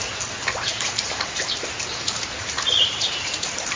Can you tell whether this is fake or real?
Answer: fake